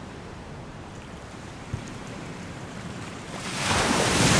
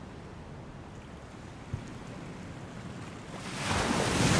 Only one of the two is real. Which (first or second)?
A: second